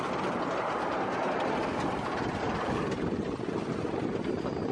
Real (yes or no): yes